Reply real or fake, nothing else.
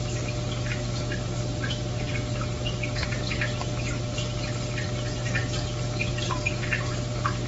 real